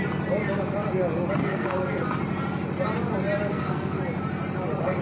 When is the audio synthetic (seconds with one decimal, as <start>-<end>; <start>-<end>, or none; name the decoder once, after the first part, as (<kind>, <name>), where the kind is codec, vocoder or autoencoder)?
1.4-1.9 (codec, SNAC); 3.5-4.0

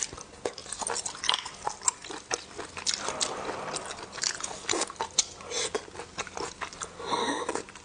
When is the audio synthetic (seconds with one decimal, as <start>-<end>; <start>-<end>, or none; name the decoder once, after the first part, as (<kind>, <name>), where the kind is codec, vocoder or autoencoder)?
none

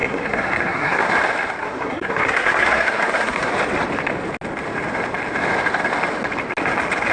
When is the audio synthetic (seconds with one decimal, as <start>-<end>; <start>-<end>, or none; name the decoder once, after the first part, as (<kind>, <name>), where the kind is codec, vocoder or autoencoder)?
0.0-1.1 (codec, SNAC); 1.6-3.5